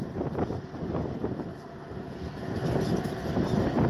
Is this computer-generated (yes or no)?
no